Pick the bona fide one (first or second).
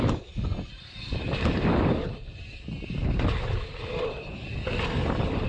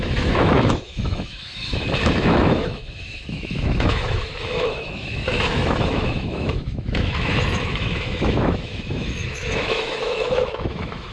first